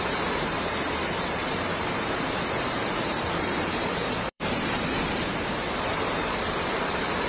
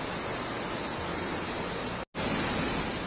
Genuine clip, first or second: second